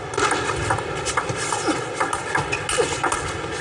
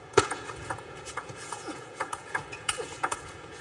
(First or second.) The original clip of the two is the first